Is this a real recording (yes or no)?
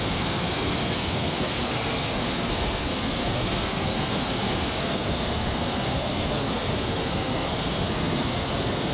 no